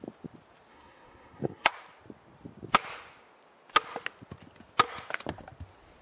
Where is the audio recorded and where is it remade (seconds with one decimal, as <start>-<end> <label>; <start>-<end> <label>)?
0.0-0.7 recorded; 0.7-1.7 remade; 1.7-6.0 recorded